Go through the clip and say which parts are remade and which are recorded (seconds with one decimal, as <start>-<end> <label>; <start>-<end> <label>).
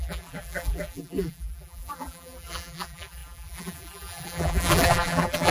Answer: 0.0-5.5 remade